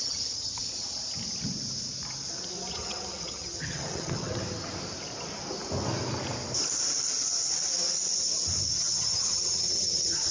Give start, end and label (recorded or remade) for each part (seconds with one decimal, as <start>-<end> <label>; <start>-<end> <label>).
0.0-0.6 remade; 0.6-2.7 recorded; 2.7-4.3 remade; 4.3-8.7 recorded; 8.7-10.3 remade